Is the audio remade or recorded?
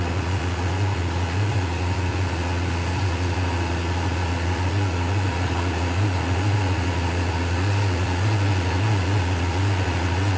remade